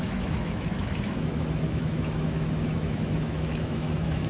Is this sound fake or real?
fake